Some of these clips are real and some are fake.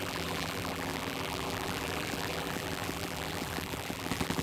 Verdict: fake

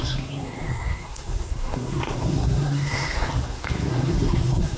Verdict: fake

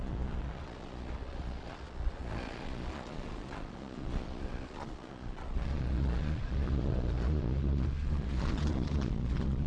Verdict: fake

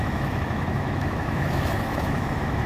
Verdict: fake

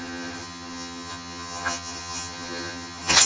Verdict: fake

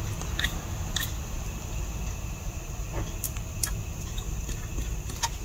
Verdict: real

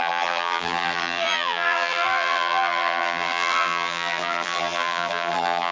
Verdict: fake